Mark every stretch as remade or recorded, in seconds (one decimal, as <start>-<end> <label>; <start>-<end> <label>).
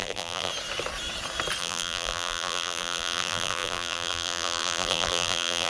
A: 0.0-0.5 remade; 0.5-1.6 recorded; 1.6-5.7 remade